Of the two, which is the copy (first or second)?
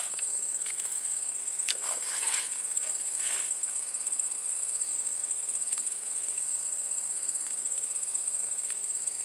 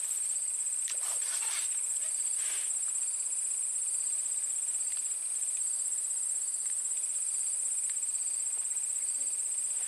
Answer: first